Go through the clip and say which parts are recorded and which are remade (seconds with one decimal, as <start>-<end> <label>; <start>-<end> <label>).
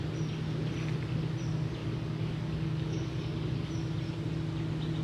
0.0-1.8 recorded; 1.8-3.7 remade; 3.7-5.0 recorded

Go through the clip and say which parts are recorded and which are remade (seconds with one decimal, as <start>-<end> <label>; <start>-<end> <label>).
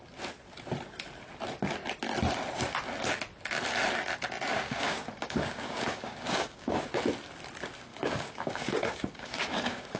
0.0-4.5 recorded; 4.5-6.9 remade; 6.9-7.9 recorded; 7.9-10.0 remade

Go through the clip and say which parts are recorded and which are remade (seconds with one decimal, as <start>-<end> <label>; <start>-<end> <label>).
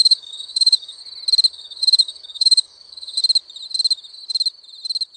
0.0-1.0 remade; 1.0-1.5 recorded; 1.5-3.2 remade; 3.2-5.2 recorded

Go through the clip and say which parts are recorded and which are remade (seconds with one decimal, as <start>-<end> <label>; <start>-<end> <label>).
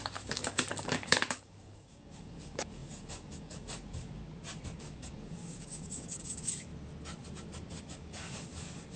0.0-4.2 remade; 4.2-4.8 recorded; 4.8-6.7 remade; 6.7-7.8 recorded; 7.8-9.0 remade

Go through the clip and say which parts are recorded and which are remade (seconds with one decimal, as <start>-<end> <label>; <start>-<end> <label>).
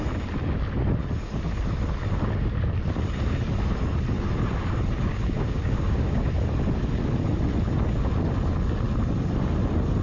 0.0-5.1 recorded; 5.1-6.3 remade; 6.3-10.0 recorded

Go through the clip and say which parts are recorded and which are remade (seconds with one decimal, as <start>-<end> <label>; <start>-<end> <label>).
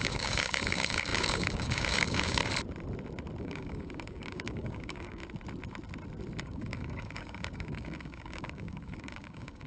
0.0-2.4 remade; 2.4-3.4 recorded; 3.4-5.2 remade; 5.2-6.4 recorded; 6.4-9.7 remade